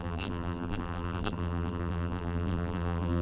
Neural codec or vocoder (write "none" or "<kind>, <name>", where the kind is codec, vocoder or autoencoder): vocoder, BigVGAN v2